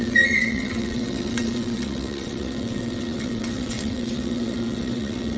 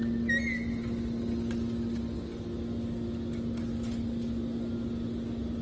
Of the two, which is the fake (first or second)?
first